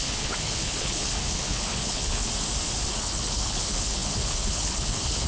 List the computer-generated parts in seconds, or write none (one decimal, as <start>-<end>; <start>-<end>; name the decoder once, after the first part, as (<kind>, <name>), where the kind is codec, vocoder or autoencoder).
0.0-2.3 (codec, HILCodec); 2.9-5.3